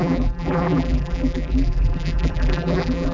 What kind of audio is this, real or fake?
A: fake